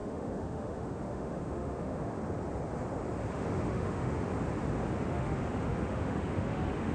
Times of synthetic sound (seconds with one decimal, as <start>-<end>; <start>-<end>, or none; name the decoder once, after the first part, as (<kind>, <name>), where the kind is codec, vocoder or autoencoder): 0.0-2.2 (autoencoder, DAC-VAE); 3.3-4.3; 5.1-6.9